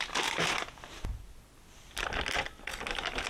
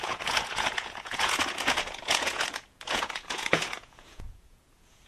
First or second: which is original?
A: first